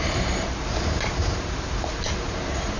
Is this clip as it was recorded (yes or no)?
no